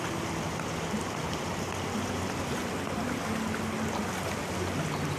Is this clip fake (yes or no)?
no